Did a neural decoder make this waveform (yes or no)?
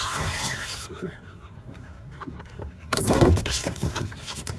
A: yes